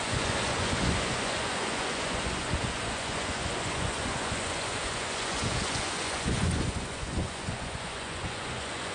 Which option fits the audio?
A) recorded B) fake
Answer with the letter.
B